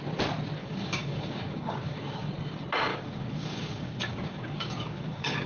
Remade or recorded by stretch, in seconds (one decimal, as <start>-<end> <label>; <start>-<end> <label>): 0.0-0.6 recorded; 0.6-2.3 remade; 2.3-2.9 recorded; 2.9-5.5 remade